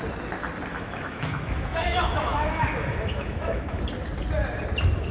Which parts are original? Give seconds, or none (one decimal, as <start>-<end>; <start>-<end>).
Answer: 0.0-0.7; 3.8-5.1